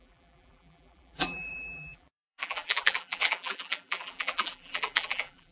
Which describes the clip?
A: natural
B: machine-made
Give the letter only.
B